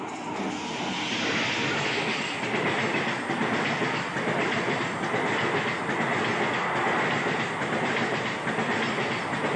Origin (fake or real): real